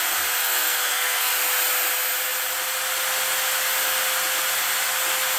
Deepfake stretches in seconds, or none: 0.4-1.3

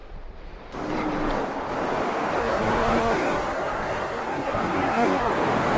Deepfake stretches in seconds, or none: 2.4-5.3

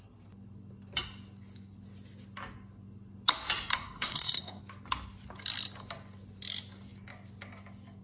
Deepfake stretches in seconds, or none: 3.7-4.6

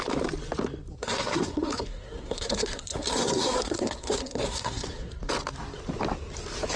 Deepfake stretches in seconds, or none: 1.0-5.1

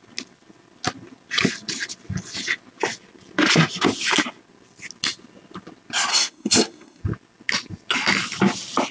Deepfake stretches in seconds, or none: 6.1-7.0

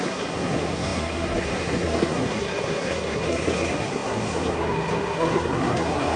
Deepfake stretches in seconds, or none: 0.0-6.2

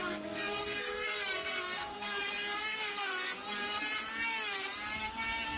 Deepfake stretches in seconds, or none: 0.0-3.4